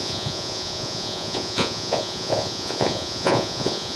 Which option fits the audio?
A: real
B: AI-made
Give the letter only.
B